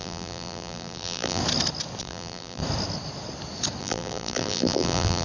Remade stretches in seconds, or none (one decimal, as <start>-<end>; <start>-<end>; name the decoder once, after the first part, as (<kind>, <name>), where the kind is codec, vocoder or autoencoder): 0.0-1.4 (vocoder, BigVGAN v2); 2.0-2.6; 3.8-5.2